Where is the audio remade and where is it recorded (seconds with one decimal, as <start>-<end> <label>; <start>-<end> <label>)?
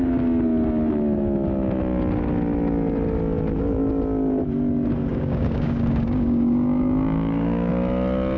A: 0.0-5.1 recorded; 5.1-7.7 remade; 7.7-8.4 recorded